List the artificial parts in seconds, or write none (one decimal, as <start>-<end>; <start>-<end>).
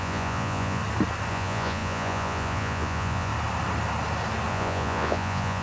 0.0-0.8; 1.3-3.3; 4.5-5.6